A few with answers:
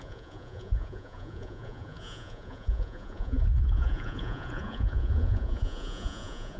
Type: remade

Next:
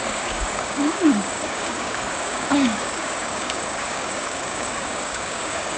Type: remade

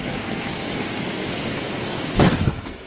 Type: remade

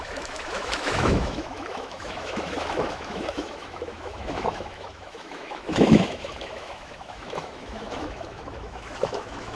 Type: remade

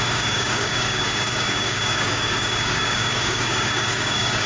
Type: remade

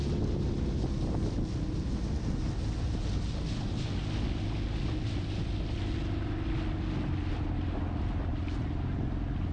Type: recorded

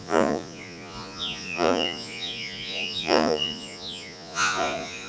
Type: remade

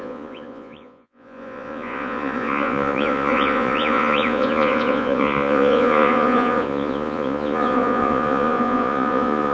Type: remade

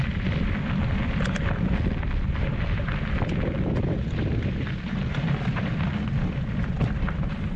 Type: remade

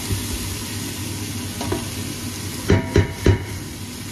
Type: recorded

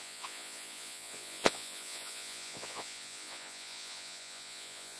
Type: remade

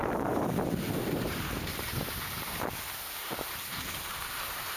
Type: remade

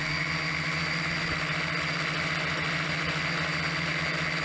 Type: recorded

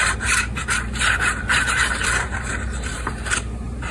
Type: remade